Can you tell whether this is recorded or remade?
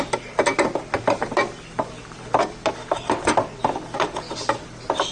recorded